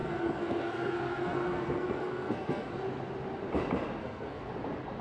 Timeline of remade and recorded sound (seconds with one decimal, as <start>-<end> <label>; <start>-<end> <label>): 0.0-2.7 remade; 2.7-4.0 recorded; 4.0-4.5 remade; 4.5-5.0 recorded